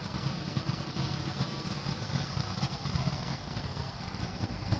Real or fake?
fake